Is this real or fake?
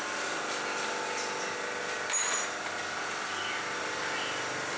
real